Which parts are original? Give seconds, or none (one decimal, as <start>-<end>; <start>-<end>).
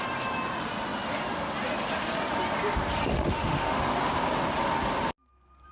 0.0-3.1; 3.8-5.7